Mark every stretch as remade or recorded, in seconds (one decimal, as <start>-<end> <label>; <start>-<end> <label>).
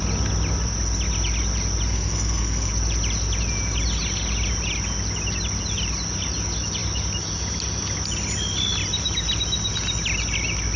0.0-1.9 recorded; 1.9-2.7 remade; 2.7-10.8 recorded